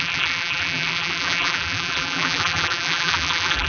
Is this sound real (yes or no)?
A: no